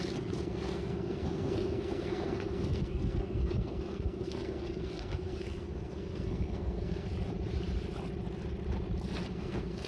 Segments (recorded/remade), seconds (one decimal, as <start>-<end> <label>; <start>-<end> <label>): 0.0-7.1 remade; 7.1-9.3 recorded; 9.3-9.9 remade